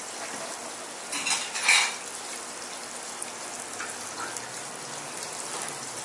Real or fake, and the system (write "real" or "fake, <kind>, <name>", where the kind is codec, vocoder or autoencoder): real